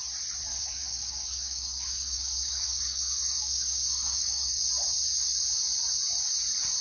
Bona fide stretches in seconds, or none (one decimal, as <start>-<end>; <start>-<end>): 0.0-0.5; 4.6-6.8